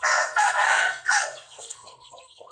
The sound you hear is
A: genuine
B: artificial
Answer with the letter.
B